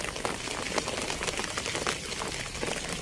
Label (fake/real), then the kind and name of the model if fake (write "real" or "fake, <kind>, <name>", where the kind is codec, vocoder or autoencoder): real